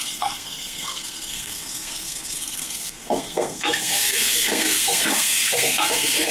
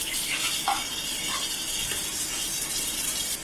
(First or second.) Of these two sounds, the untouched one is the second